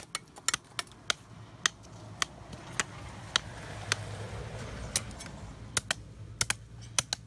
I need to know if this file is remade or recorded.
recorded